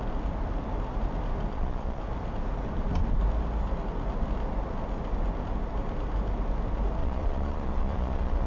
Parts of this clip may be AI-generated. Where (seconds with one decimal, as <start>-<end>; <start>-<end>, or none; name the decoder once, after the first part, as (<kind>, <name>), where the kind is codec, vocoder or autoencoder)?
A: 1.5-2.0 (vocoder, Vocos); 7.0-8.5